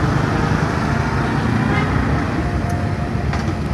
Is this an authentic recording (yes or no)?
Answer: yes